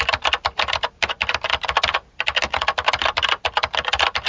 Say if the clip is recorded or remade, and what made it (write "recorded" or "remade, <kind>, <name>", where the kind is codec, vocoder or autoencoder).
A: recorded